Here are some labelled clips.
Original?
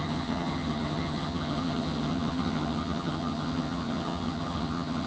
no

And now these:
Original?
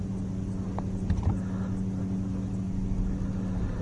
yes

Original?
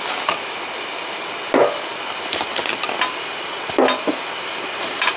yes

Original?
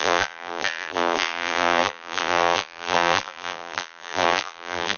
no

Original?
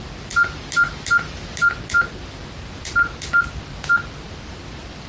yes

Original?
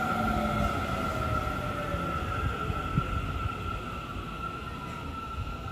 yes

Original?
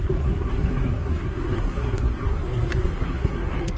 no